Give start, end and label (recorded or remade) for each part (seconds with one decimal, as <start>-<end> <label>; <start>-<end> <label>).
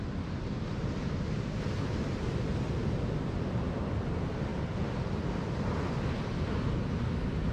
0.0-2.8 recorded; 2.8-3.8 remade; 3.8-4.5 recorded; 4.5-5.7 remade; 5.7-7.5 recorded